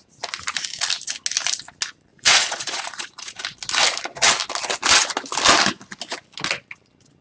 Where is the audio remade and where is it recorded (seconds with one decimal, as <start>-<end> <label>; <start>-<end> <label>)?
0.0-2.1 recorded; 2.1-3.4 remade; 3.4-7.2 recorded